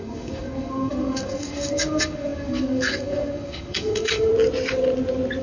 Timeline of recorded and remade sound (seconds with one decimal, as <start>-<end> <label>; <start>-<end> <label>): 0.0-4.3 remade; 4.3-5.4 recorded